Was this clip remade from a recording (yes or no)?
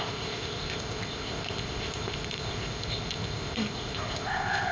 yes